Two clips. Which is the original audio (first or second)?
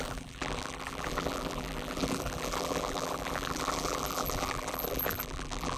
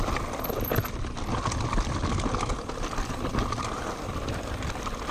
second